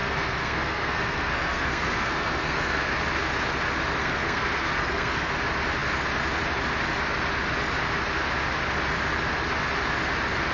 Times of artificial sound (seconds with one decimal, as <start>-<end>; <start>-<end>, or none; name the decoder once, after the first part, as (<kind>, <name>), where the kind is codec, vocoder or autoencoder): 0.0-2.9 (codec, SNAC); 4.0-5.3